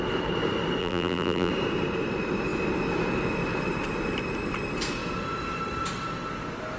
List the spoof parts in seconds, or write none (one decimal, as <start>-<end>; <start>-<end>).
0.8-1.5